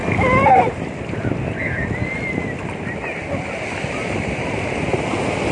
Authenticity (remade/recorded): recorded